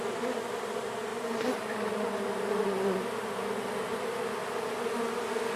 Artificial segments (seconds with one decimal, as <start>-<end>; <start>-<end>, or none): 1.1-3.2; 4.4-4.9